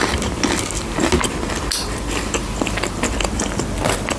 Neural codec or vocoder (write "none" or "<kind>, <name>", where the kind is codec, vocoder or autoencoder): none